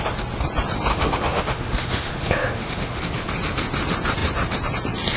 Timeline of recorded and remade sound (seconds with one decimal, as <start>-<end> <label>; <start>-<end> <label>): 0.0-0.9 recorded; 0.9-3.0 remade; 3.0-5.2 recorded